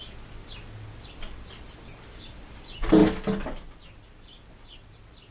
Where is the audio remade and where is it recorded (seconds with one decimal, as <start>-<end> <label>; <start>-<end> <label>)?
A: 0.0-5.3 recorded